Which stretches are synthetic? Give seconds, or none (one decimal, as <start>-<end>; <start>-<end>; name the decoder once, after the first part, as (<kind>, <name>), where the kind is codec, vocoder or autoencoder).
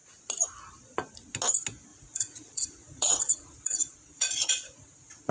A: 1.9-5.3 (vocoder, Vocos)